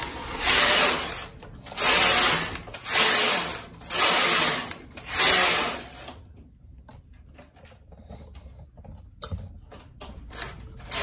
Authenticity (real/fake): real